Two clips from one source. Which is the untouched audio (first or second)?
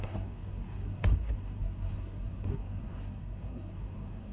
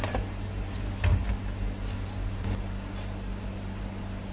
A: second